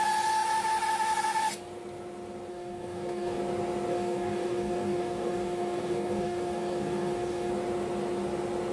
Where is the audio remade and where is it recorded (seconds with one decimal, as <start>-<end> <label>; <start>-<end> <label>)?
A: 0.0-2.5 recorded; 2.5-3.4 remade; 3.4-3.9 recorded; 3.9-7.5 remade; 7.5-8.7 recorded